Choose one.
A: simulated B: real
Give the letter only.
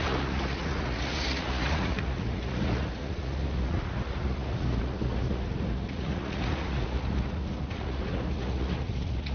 A